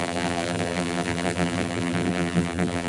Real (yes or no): no